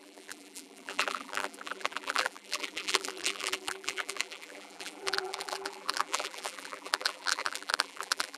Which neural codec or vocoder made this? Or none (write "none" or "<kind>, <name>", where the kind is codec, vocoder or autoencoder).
vocoder, BigVGAN v2